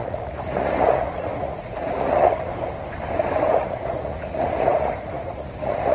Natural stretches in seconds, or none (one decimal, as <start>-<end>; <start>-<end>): 2.5-3.4